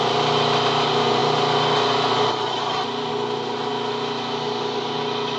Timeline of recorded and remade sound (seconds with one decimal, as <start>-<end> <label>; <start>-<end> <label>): 0.0-1.2 recorded; 1.2-3.1 remade; 3.1-5.4 recorded